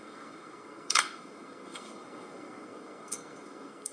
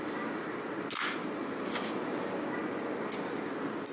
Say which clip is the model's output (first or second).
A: first